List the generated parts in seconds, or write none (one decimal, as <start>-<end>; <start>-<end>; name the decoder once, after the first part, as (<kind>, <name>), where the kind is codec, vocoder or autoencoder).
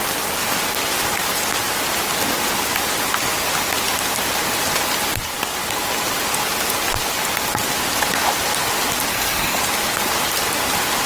9.1-9.6 (codec, SNAC)